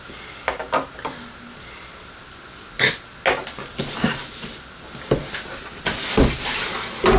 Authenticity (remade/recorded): recorded